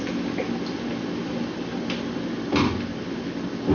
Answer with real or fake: real